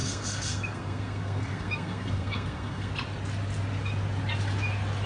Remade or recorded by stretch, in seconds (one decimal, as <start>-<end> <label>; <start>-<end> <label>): 0.0-2.9 remade; 2.9-5.1 recorded